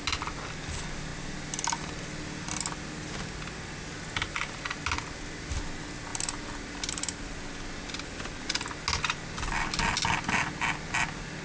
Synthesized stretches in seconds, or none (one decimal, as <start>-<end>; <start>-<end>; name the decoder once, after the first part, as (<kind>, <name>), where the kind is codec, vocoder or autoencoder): none